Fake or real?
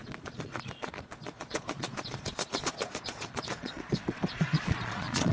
fake